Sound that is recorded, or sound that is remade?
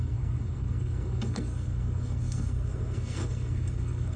remade